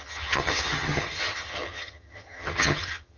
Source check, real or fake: fake